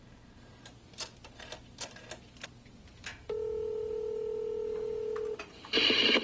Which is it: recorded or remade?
recorded